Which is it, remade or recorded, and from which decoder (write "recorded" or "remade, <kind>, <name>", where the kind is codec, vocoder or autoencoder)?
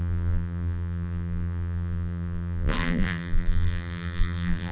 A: remade, vocoder, BigVGAN v2